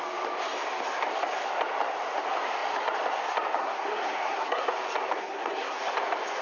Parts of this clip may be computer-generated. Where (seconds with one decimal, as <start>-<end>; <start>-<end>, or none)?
3.6-4.7; 5.2-5.8